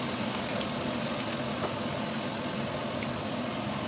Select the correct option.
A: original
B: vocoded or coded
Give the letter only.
B